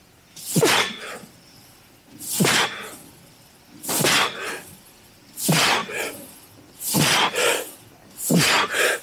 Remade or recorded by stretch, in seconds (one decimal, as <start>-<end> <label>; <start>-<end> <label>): 0.0-5.8 remade; 5.8-9.0 recorded